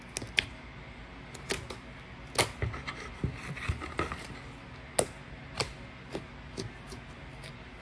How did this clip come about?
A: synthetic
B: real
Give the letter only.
B